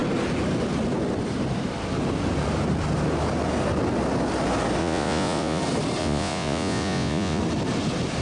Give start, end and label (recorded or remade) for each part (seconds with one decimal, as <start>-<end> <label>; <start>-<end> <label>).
0.0-4.8 recorded; 4.8-5.6 remade; 5.6-6.0 recorded; 6.0-7.4 remade; 7.4-8.2 recorded